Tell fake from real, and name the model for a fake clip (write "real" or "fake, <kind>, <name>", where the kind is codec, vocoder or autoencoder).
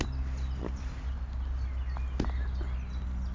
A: real